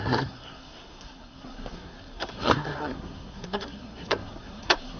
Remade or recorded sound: remade